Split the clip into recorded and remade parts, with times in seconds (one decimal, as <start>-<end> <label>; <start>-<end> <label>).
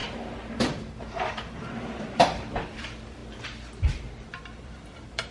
0.0-5.3 remade